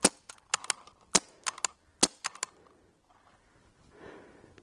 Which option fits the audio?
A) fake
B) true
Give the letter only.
B